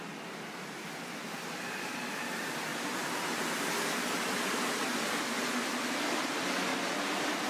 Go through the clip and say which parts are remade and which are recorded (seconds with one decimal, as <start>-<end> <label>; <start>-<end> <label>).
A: 0.0-7.5 recorded